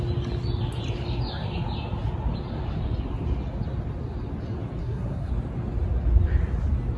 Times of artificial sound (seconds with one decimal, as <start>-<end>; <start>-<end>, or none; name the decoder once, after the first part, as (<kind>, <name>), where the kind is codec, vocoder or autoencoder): 4.8-5.3 (codec, SNAC)